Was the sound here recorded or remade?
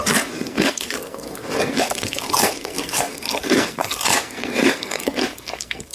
remade